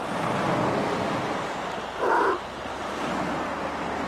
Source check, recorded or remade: recorded